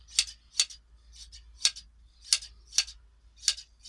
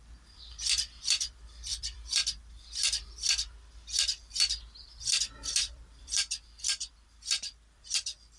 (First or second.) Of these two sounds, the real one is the first